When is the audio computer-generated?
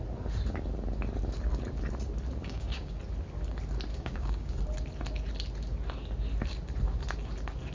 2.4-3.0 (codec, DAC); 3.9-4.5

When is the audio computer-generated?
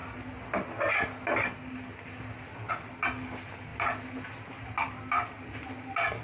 none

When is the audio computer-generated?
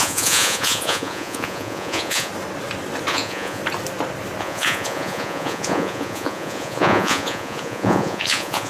0.0-2.3 (vocoder, Vocos); 3.1-3.6; 4.4-8.7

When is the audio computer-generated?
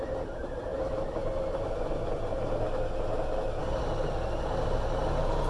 none